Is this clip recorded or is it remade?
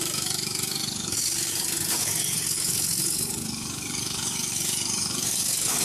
remade